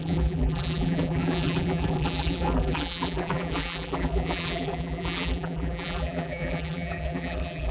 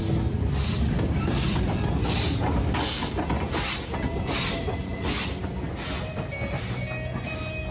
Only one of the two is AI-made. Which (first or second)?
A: first